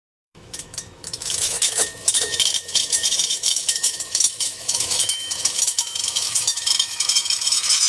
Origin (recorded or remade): remade